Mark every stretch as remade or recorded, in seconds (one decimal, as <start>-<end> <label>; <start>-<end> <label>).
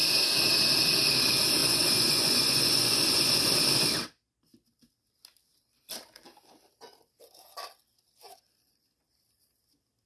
0.0-1.6 recorded; 1.6-3.5 remade; 3.5-10.1 recorded